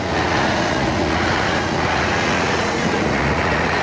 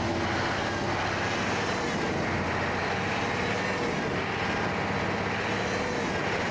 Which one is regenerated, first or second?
first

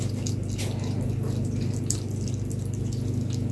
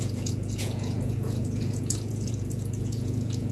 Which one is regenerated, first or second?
second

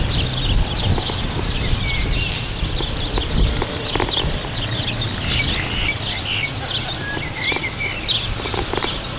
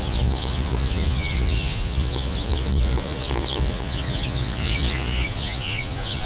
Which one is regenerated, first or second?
second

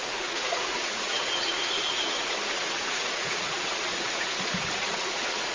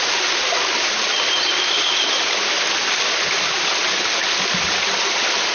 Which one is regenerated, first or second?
first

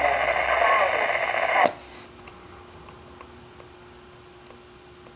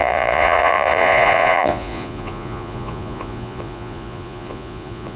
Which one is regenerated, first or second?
second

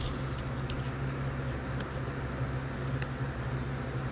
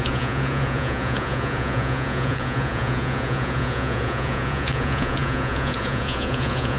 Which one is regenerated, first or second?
second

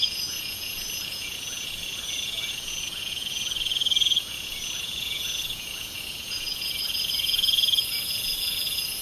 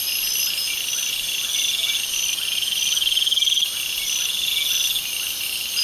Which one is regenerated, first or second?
first